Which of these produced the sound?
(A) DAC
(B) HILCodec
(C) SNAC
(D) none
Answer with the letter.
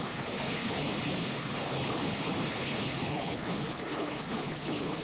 B